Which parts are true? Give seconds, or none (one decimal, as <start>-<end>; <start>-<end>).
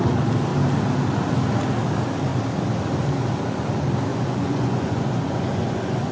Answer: 0.0-4.1